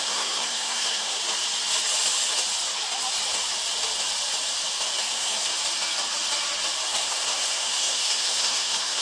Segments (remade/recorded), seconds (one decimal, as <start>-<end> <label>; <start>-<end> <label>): 0.0-1.2 remade; 1.2-5.0 recorded; 5.0-5.5 remade; 5.5-6.9 recorded; 6.9-9.0 remade